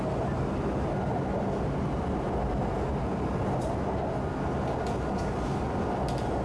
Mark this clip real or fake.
real